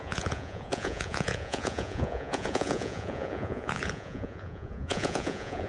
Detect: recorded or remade remade